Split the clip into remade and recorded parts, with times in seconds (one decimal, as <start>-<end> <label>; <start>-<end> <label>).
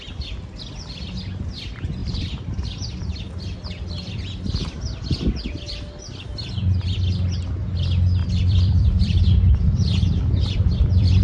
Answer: 0.0-2.0 recorded; 2.0-3.2 remade; 3.2-8.2 recorded; 8.2-11.2 remade